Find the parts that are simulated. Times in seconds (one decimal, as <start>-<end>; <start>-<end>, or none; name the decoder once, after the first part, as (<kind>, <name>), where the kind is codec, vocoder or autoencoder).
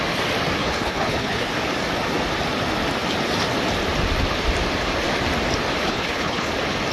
0.6-1.5 (codec, HILCodec); 5.8-6.5